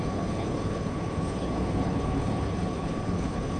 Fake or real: fake